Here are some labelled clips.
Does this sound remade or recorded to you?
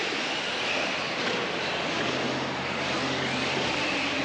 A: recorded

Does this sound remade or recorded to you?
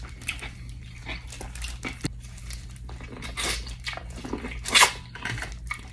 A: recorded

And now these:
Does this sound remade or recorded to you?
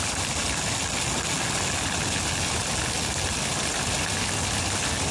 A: recorded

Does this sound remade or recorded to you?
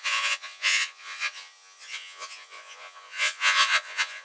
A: remade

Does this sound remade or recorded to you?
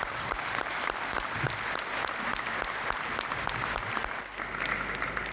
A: recorded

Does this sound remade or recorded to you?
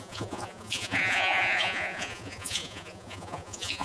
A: remade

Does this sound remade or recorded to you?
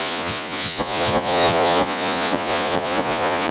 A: remade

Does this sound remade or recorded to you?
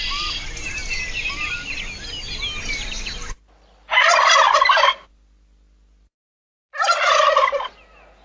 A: recorded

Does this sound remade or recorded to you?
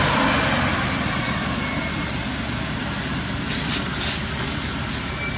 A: recorded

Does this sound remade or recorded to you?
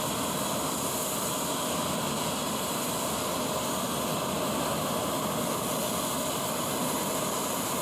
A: recorded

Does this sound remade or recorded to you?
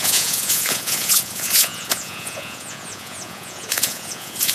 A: remade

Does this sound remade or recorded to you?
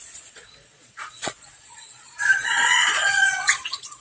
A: remade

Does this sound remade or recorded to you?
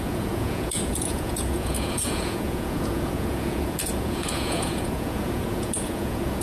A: remade